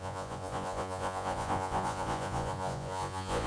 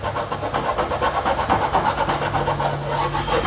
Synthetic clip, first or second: first